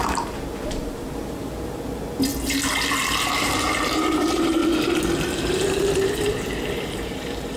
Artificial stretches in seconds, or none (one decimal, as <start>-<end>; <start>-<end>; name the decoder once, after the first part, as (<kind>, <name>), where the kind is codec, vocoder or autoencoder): 0.0-2.3 (vocoder, BigVGAN v2); 3.3-4.6; 5.2-7.6